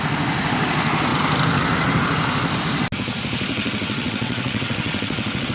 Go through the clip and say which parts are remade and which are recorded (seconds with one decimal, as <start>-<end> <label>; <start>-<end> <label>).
0.0-3.5 recorded; 3.5-5.5 remade